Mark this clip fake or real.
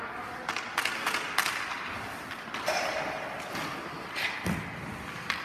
real